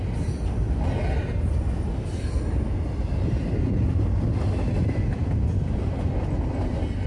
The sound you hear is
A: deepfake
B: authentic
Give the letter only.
B